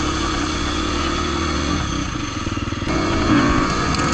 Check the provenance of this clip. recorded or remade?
remade